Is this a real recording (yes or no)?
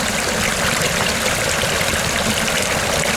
yes